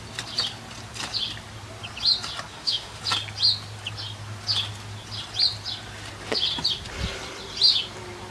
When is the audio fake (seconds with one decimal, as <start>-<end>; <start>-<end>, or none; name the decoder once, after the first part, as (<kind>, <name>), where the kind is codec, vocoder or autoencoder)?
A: 2.5-3.0 (autoencoder, DAC-VAE)